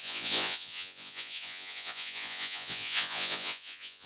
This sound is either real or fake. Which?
fake